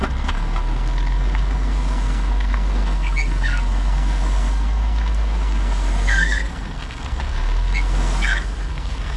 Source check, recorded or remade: remade